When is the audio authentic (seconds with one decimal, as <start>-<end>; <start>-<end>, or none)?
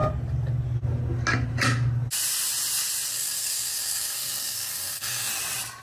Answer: 0.0-3.1; 5.3-5.8